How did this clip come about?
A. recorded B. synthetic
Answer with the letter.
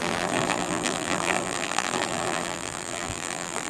B